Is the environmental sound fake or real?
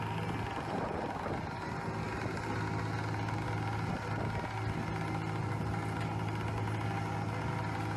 real